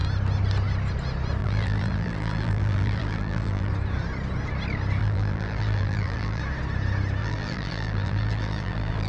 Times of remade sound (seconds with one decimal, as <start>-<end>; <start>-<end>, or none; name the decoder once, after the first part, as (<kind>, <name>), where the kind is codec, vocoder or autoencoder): 1.4-3.7 (vocoder, BigVGAN v2); 5.0-6.4; 7.2-9.1